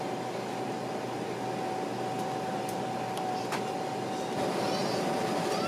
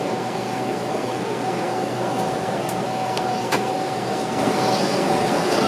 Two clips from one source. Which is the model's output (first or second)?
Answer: second